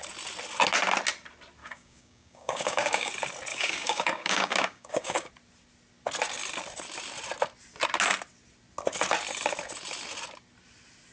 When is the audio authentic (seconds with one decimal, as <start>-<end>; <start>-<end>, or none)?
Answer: 0.0-1.6; 3.1-3.5; 5.3-11.1